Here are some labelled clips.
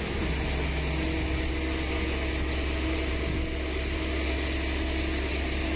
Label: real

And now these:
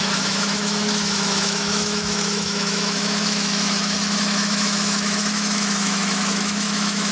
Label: fake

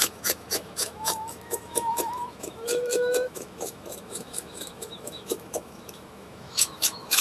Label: fake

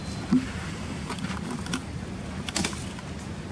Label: real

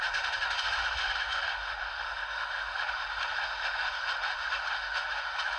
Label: fake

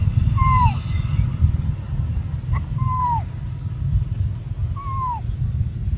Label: real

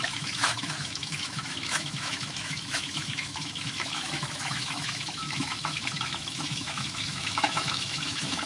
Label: fake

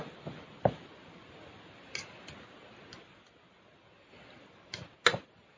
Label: real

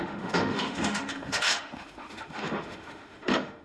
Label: fake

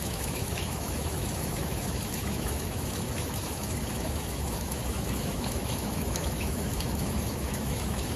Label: fake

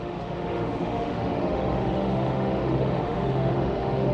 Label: fake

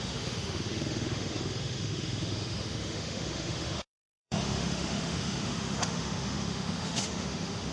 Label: fake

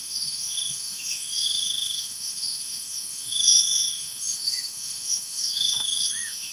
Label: fake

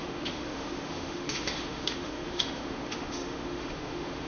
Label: fake